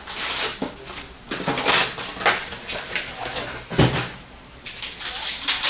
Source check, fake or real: real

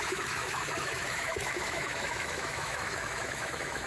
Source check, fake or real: fake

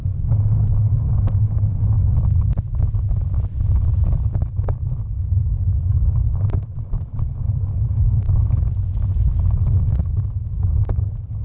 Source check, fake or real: real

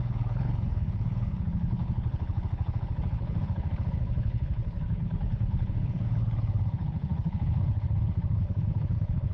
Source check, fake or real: fake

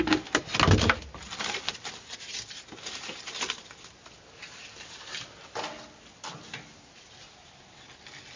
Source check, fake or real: real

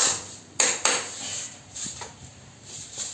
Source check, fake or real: real